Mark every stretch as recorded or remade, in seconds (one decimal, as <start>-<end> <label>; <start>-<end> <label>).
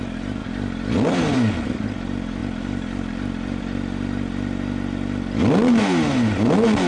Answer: 0.0-0.4 recorded; 0.4-1.5 remade; 1.5-2.4 recorded; 2.4-3.6 remade; 3.6-6.9 recorded